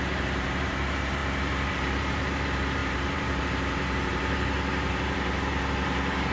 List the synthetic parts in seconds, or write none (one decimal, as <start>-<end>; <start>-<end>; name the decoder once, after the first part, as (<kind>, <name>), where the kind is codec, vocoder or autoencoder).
0.0-1.2 (vocoder, BigVGAN v2); 1.7-6.3